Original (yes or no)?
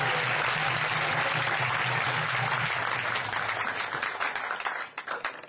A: yes